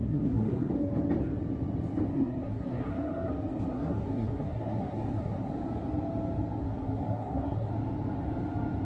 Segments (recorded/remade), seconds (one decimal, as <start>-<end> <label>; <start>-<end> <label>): 0.0-0.7 remade; 0.7-2.1 recorded; 2.1-3.3 remade; 3.3-3.7 recorded; 3.7-5.5 remade; 5.5-6.6 recorded; 6.6-7.7 remade; 7.7-8.8 recorded